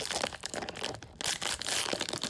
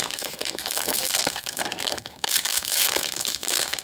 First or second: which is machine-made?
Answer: second